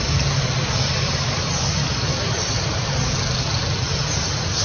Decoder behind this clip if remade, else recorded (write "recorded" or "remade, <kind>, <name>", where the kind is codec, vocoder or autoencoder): recorded